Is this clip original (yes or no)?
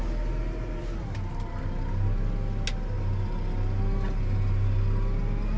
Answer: yes